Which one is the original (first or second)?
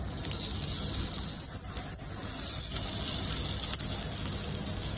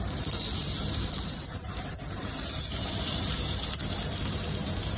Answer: first